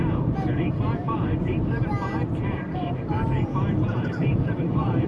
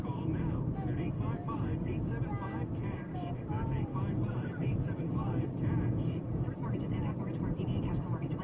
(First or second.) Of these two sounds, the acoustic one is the second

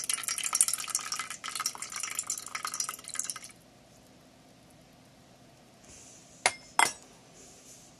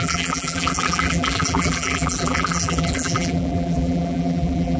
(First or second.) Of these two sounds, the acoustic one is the first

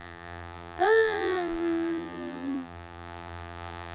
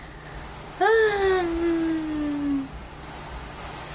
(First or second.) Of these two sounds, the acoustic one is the second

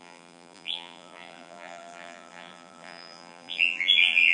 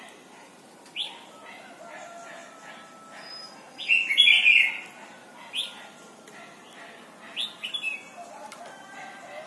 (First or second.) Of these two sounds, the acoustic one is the second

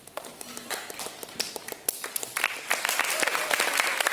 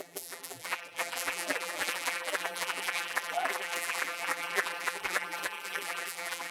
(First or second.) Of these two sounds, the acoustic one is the first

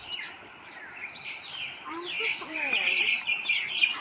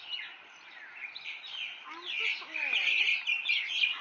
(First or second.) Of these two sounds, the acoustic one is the second